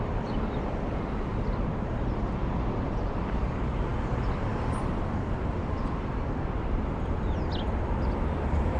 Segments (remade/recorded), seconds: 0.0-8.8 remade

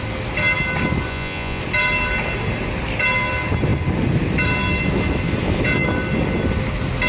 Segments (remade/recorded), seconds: 0.0-1.1 recorded; 1.1-1.6 remade; 1.6-7.1 recorded

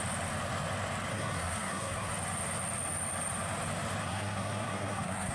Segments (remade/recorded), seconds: 0.0-1.1 recorded; 1.1-2.1 remade; 2.1-4.0 recorded; 4.0-5.3 remade

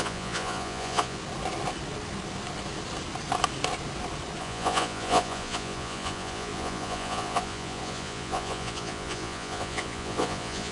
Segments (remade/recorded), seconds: 0.0-1.2 remade; 1.2-4.4 recorded; 4.4-10.7 remade